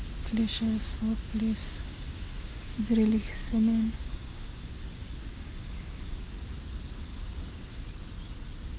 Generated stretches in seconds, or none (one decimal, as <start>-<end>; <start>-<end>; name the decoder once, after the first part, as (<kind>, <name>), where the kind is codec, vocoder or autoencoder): 1.6-2.8 (codec, DAC); 3.4-6.1; 7.1-7.8